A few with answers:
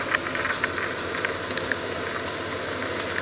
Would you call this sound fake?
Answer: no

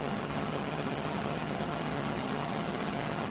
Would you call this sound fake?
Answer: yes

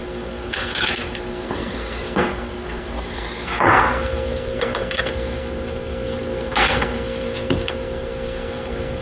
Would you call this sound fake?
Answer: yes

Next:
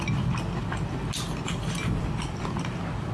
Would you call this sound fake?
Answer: no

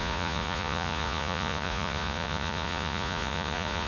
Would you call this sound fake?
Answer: yes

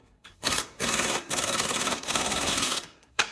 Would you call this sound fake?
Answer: yes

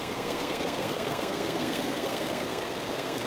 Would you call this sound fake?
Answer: yes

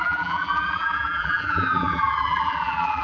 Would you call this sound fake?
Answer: yes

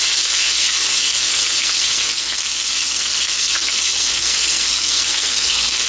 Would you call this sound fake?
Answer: yes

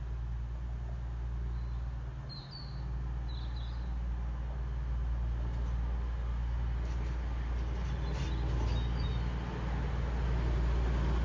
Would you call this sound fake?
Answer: no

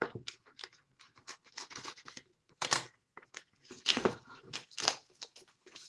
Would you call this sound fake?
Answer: yes